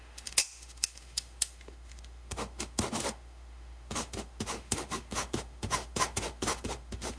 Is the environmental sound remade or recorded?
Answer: remade